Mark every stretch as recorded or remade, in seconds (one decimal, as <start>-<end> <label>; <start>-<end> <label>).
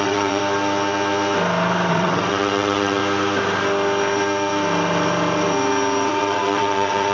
0.0-0.4 remade; 0.4-1.9 recorded; 1.9-3.0 remade; 3.0-6.1 recorded; 6.1-7.1 remade